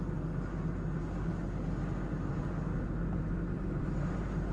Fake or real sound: real